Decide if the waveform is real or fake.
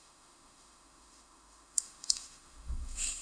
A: fake